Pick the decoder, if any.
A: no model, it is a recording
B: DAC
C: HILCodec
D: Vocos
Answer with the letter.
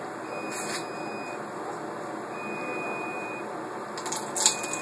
A